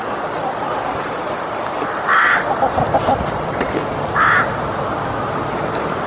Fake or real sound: real